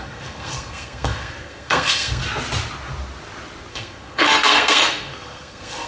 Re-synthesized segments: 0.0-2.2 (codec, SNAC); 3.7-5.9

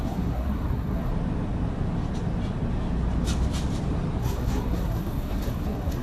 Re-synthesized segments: 0.0-1.1 (codec, SNAC); 4.2-6.0

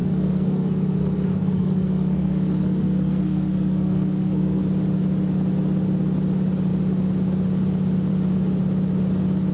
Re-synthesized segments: 0.0-4.6 (codec, SNAC)

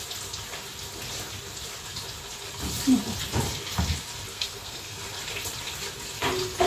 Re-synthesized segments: 4.3-5.0 (codec, SNAC)

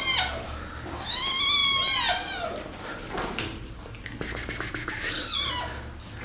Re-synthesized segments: none